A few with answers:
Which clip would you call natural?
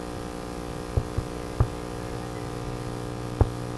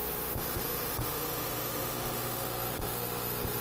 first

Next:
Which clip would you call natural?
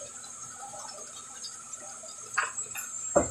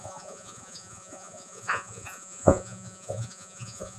first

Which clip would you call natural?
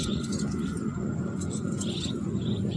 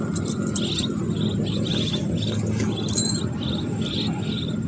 second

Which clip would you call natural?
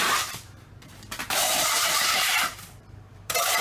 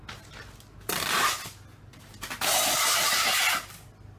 second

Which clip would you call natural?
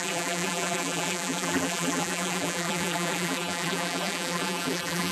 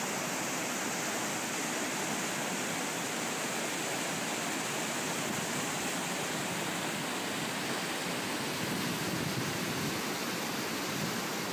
second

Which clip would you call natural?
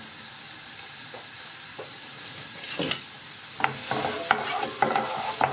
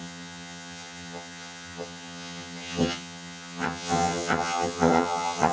first